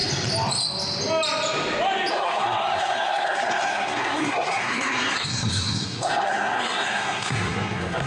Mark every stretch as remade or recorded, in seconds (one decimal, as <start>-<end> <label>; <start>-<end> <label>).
0.0-2.1 recorded; 2.1-8.1 remade